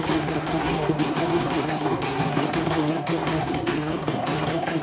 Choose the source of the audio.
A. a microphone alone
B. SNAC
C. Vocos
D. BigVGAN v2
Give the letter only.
B